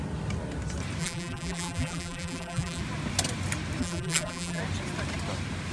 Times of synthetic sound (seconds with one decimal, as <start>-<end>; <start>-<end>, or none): 1.0-2.8; 3.8-4.6